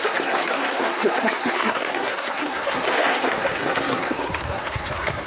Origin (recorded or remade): remade